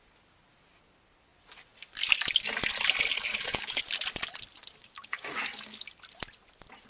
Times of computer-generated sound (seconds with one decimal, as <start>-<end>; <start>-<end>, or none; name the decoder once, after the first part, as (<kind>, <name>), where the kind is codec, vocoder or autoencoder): 3.3-3.8 (codec, DAC); 4.8-5.4